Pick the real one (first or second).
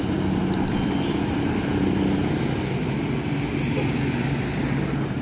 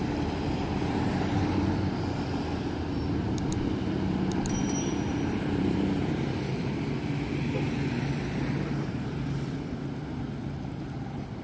first